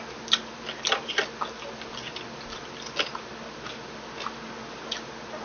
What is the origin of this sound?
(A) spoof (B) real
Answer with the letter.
B